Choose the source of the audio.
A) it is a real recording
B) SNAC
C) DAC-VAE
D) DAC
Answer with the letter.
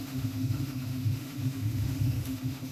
C